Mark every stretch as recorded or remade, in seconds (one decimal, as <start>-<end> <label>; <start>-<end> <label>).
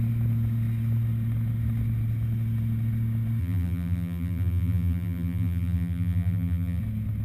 0.0-3.4 recorded; 3.4-6.8 remade; 6.8-7.2 recorded